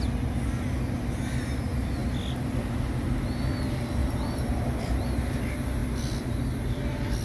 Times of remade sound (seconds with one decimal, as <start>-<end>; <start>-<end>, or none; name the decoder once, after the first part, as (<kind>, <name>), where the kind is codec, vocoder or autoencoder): 2.0-2.6 (vocoder, BigVGAN v2); 4.0-5.0; 5.8-6.4